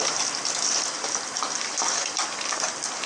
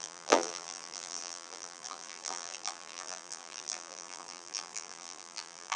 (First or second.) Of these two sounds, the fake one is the second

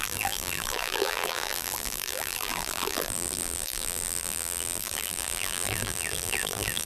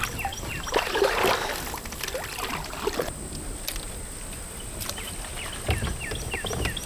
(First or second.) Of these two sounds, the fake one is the first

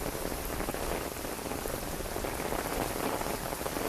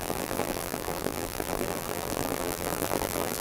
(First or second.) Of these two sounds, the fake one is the second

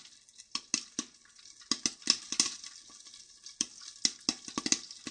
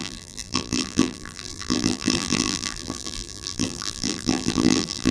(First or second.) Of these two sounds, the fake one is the second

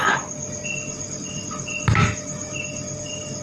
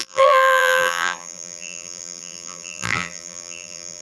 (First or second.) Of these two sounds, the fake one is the second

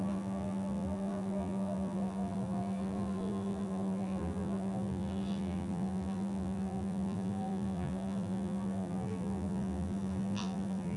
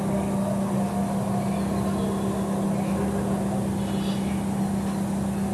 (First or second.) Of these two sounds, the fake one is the first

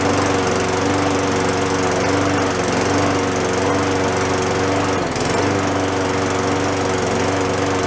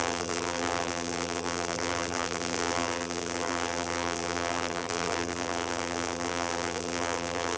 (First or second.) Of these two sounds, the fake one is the second